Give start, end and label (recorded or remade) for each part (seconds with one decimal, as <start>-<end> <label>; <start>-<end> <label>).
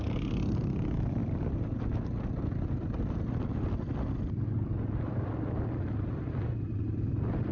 0.0-1.2 recorded; 1.2-5.3 remade; 5.3-7.5 recorded